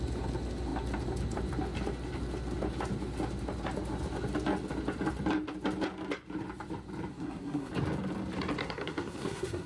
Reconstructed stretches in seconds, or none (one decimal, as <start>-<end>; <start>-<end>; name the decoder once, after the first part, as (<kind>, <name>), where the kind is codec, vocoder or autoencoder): 7.1-7.7 (codec, SNAC); 8.6-9.7